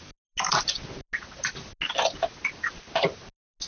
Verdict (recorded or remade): recorded